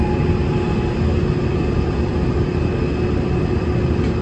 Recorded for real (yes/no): yes